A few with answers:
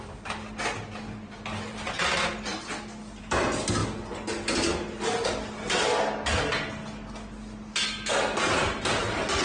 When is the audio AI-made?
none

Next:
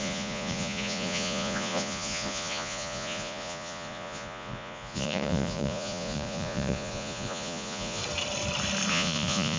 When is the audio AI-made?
0.0-8.0; 8.9-9.6

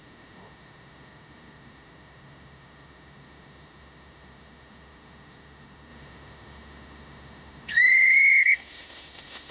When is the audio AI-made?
0.0-9.5

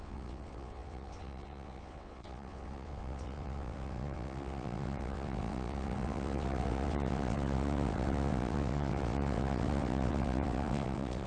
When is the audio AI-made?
0.0-11.3